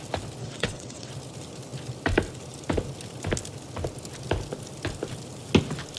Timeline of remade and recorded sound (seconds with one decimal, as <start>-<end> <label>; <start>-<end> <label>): 0.0-0.4 recorded; 0.4-1.1 remade; 1.1-6.0 recorded